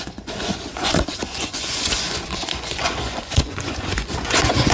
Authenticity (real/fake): fake